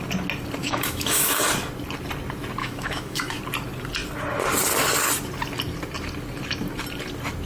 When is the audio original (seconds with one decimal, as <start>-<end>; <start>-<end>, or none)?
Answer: 0.0-0.6; 1.4-2.6; 3.4-7.5